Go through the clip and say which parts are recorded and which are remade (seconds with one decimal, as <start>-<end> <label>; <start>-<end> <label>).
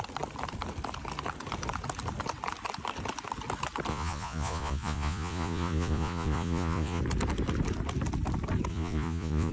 0.0-3.9 recorded; 3.9-7.0 remade; 7.0-8.7 recorded; 8.7-9.5 remade